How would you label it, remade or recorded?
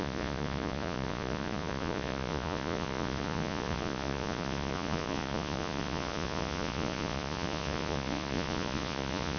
remade